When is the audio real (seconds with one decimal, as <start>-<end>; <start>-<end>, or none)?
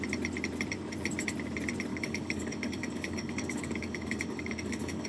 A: 0.0-1.9